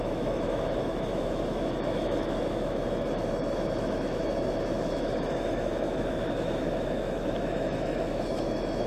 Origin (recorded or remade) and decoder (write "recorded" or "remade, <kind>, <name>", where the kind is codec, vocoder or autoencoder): remade, autoencoder, DAC-VAE